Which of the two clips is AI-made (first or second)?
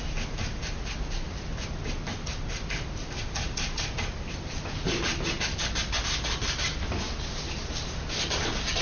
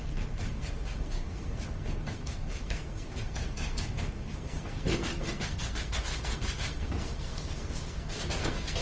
second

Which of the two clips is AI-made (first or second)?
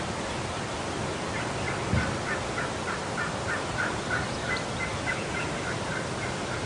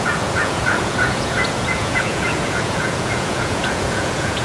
second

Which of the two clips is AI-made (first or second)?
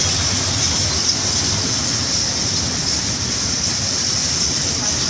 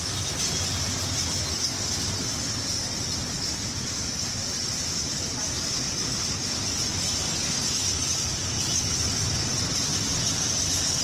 first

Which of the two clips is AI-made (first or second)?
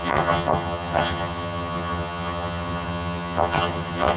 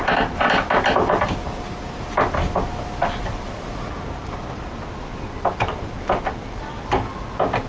first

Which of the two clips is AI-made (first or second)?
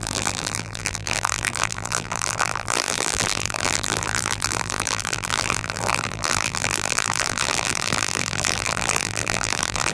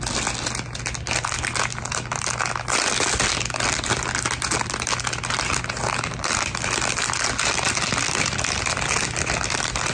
first